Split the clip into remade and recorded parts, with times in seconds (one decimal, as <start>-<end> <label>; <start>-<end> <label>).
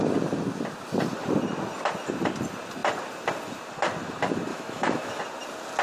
0.0-4.5 recorded; 4.5-5.2 remade; 5.2-5.8 recorded